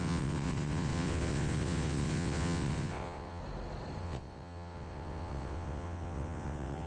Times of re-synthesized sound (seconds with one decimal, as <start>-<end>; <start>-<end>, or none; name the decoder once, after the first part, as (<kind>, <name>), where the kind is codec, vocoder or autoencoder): 0.0-3.4 (vocoder, WaveNeXt); 4.0-6.9